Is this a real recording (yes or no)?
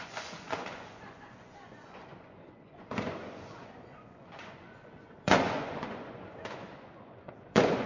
no